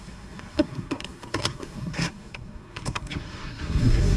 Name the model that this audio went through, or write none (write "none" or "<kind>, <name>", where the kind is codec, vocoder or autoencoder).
codec, SNAC